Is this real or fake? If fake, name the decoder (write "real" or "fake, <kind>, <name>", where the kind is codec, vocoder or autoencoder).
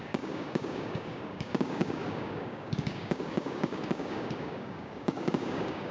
fake, codec, DAC